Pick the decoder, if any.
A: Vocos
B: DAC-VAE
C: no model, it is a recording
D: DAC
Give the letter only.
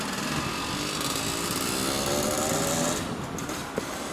C